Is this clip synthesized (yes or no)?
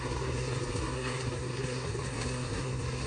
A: yes